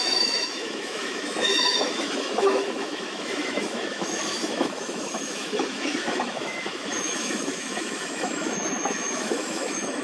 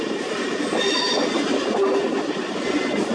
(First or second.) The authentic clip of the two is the second